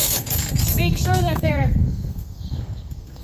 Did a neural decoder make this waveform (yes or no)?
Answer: yes